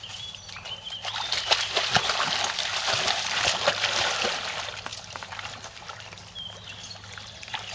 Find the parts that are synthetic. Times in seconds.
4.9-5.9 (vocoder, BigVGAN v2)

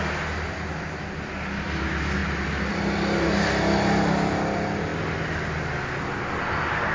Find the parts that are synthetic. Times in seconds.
none

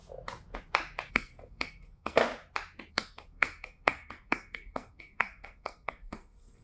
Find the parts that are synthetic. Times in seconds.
1.1-2.2 (codec, SNAC); 2.9-6.6

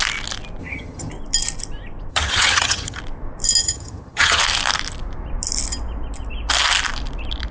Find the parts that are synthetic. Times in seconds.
0.6-1.1 (vocoder, HiFi-GAN); 2.1-3.0; 3.6-4.4

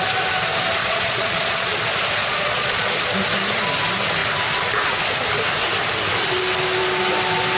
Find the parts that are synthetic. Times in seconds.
0.8-1.8 (vocoder, Vocos); 2.2-2.9

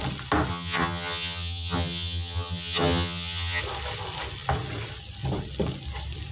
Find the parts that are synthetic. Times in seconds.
0.5-3.6 (vocoder, HiFi-GAN)

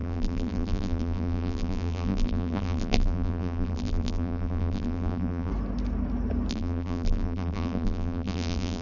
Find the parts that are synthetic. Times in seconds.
0.0-5.5 (vocoder, BigVGAN v2); 6.5-8.8

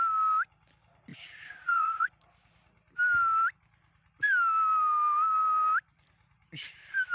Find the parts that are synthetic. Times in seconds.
1.1-2.1 (vocoder, Vocos)